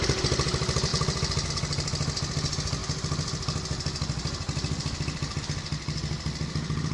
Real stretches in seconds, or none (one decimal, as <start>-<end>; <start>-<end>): 0.0-6.9